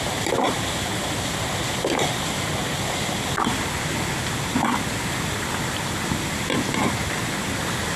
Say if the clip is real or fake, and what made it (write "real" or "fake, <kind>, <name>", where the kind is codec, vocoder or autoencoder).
real